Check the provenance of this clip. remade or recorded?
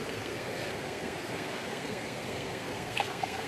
remade